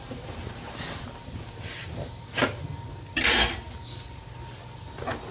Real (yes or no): yes